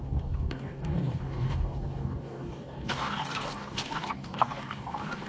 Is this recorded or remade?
remade